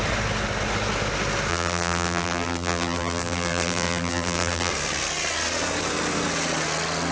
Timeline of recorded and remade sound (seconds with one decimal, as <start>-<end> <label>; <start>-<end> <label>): 0.0-1.5 recorded; 1.5-4.7 remade; 4.7-7.1 recorded